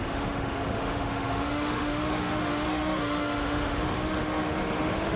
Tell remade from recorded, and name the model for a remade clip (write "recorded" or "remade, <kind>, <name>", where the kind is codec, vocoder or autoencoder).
remade, autoencoder, DAC-VAE